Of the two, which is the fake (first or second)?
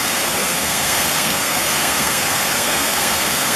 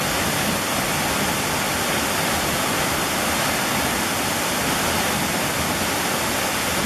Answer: first